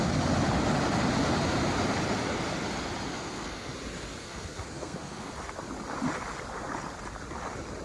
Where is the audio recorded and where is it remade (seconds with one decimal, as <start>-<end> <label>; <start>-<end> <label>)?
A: 0.0-3.1 recorded; 3.1-3.7 remade; 3.7-4.2 recorded; 4.2-5.3 remade; 5.3-7.8 recorded